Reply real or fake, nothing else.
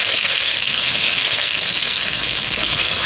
fake